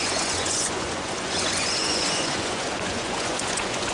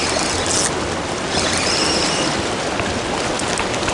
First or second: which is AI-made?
first